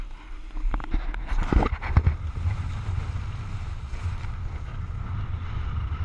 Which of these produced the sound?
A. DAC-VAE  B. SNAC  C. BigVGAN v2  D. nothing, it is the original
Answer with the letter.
D